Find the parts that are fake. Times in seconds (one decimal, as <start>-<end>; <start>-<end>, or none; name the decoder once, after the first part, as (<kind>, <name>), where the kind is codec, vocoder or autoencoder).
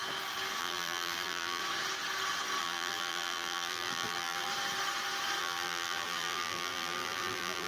0.6-1.6 (vocoder, BigVGAN v2); 2.6-4.5; 5.4-7.7